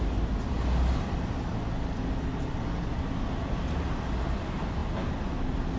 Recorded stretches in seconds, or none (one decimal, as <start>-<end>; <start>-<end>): 0.0-5.8